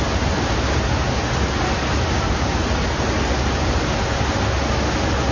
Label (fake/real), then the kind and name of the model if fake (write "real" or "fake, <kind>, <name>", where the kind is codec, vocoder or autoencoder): real